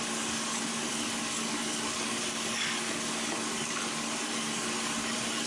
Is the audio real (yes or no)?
no